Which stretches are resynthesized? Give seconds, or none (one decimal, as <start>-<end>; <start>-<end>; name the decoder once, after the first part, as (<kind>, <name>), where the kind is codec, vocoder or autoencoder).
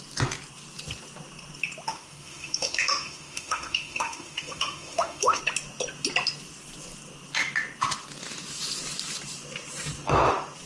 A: 1.9-5.4 (autoencoder, DAC-VAE)